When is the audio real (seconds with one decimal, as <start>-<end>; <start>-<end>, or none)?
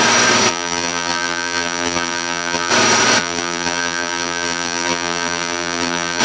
0.0-0.5; 2.7-3.2